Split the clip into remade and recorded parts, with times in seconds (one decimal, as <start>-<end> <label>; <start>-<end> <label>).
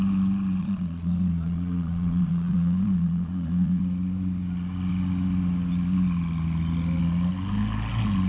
0.0-0.6 recorded; 0.6-3.8 remade; 3.8-8.3 recorded